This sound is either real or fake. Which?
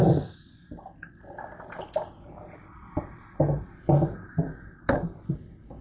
fake